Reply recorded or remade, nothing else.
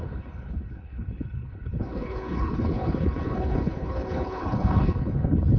remade